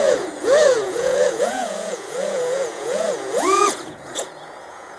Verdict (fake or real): fake